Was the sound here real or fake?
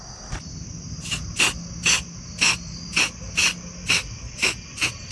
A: real